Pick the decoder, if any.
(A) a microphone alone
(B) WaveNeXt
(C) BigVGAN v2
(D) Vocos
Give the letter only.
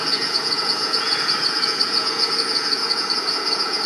D